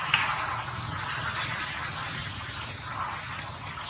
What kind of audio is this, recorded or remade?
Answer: recorded